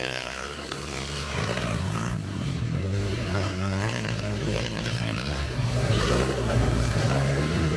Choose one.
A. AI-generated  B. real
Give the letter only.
A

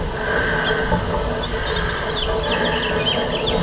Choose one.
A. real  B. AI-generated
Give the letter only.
A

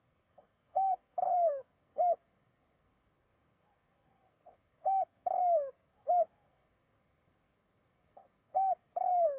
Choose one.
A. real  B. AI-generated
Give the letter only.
B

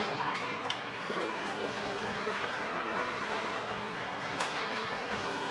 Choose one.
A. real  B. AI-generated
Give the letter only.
B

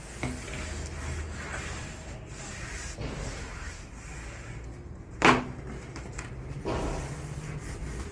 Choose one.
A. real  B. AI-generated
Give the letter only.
A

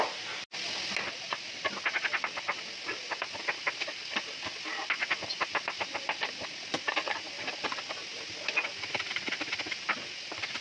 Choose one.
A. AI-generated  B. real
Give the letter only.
B